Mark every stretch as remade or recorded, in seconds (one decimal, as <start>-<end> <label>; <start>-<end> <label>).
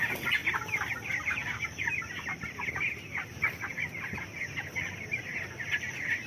0.0-6.3 recorded